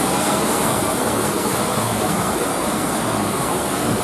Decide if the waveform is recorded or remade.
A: remade